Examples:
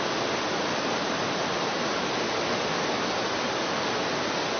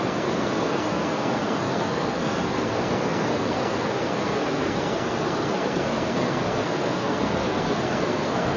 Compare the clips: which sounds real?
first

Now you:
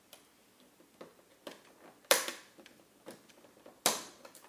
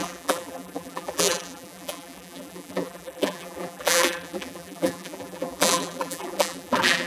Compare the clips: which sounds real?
first